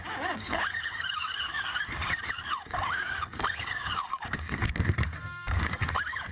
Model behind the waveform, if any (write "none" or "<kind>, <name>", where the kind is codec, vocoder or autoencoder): codec, DAC